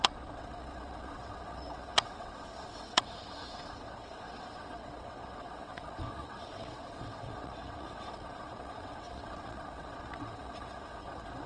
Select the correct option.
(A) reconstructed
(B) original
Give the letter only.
A